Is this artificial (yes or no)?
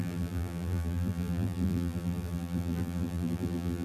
yes